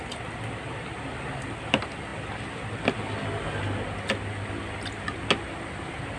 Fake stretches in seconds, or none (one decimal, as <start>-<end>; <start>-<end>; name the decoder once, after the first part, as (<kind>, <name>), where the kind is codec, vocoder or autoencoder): none